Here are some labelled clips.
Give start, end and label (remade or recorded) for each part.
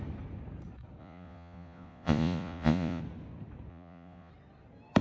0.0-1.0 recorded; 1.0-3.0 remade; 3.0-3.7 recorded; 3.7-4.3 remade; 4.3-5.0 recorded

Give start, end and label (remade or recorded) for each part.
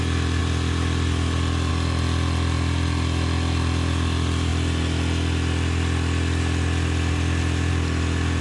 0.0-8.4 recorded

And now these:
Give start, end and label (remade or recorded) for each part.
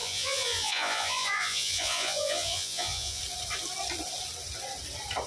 0.0-3.2 remade; 3.2-5.3 recorded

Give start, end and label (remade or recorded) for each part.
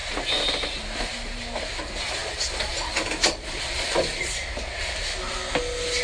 0.0-6.0 recorded